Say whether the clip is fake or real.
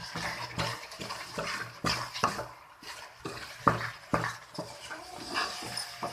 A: fake